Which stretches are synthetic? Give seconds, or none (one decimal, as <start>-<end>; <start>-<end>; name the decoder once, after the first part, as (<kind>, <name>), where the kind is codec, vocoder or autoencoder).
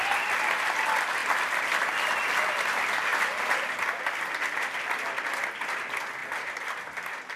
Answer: 1.2-1.8 (vocoder, BigVGAN v2); 3.1-5.8; 6.2-6.7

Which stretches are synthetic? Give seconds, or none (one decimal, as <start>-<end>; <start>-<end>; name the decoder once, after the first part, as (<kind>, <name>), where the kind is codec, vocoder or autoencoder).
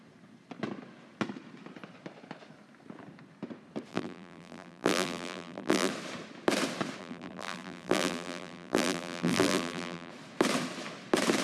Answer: 3.9-5.9 (vocoder, BigVGAN v2); 7.0-10.1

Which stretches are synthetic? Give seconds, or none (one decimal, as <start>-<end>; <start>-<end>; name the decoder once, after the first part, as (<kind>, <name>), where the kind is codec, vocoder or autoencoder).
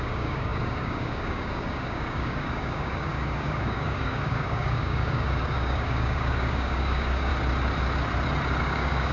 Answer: 0.0-7.3 (codec, DAC); 8.6-9.1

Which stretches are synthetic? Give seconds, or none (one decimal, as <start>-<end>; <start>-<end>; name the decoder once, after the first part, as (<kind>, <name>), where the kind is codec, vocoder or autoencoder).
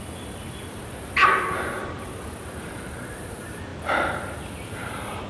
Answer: none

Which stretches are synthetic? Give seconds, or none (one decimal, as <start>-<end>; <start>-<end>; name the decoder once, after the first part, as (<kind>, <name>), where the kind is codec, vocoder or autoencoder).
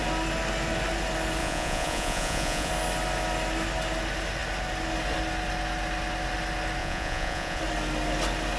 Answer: 1.4-2.7 (vocoder, Vocos); 6.8-7.6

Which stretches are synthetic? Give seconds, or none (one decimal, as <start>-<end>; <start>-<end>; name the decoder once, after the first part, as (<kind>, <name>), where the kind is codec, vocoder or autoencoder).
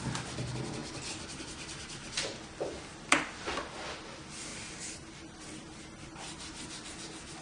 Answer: none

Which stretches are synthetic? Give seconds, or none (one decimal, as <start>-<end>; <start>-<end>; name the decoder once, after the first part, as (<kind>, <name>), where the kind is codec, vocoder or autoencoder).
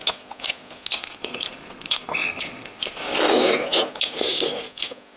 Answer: 0.9-3.3 (codec, SNAC)